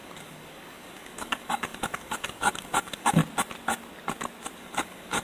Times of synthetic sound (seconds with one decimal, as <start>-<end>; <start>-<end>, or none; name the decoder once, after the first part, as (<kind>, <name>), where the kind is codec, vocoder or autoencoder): 0.0-3.2 (codec, DAC); 4.6-5.2